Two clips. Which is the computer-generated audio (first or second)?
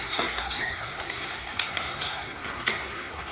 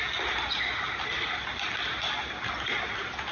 first